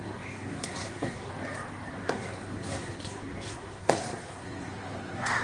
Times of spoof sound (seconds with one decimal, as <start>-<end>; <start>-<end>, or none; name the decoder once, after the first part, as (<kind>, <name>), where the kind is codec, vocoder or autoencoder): 0.0-1.3 (codec, SNAC); 1.9-5.4